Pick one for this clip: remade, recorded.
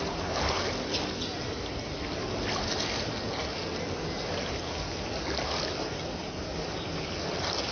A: recorded